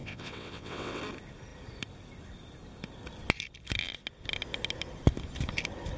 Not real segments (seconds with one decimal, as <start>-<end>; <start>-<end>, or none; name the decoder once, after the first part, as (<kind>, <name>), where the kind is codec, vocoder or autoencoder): 0.0-1.0 (vocoder, WaveNeXt)